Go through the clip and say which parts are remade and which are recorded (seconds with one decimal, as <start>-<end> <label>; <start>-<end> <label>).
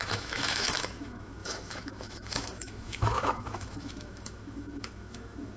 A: 0.0-5.6 remade